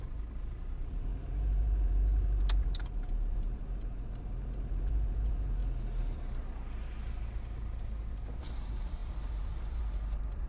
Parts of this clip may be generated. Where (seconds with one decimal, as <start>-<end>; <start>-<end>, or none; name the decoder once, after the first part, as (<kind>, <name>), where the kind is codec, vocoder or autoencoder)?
0.0-5.6 (vocoder, BigVGAN v2); 8.4-10.5